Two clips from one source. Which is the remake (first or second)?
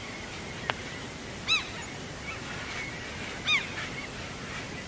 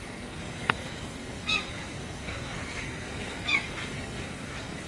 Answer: second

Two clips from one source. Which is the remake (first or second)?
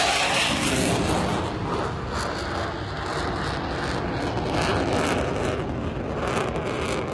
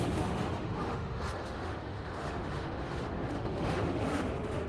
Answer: second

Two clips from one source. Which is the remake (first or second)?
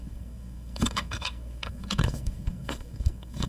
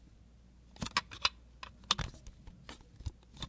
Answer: first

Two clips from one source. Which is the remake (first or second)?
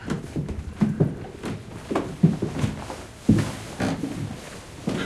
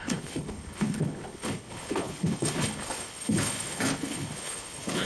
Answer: second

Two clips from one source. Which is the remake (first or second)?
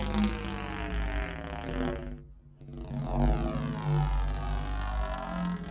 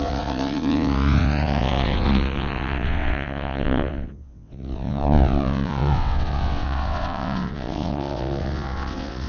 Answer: second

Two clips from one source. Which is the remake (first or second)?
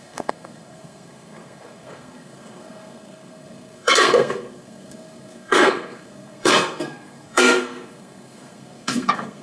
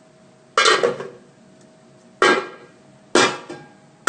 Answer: first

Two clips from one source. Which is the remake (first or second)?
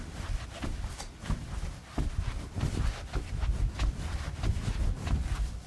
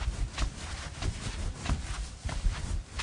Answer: second